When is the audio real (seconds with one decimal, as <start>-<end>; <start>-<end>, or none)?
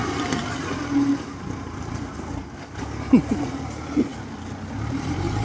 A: 4.1-4.7